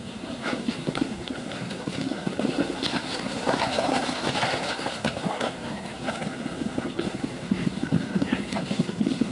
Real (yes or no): no